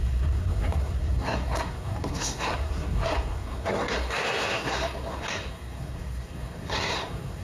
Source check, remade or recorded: remade